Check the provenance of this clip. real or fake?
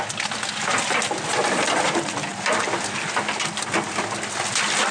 real